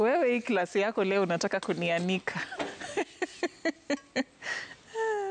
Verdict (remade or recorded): recorded